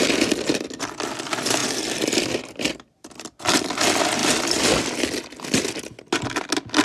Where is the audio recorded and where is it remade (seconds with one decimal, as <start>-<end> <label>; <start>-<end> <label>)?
0.0-1.6 recorded; 1.6-3.7 remade; 3.7-6.8 recorded